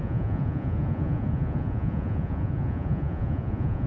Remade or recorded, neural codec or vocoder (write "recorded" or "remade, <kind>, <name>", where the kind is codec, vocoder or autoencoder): remade, vocoder, Vocos